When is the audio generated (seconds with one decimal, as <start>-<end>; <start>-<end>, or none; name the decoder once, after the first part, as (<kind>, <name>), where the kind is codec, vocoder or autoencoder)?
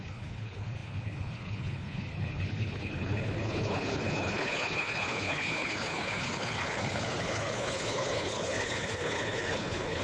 0.0-10.0 (codec, HILCodec)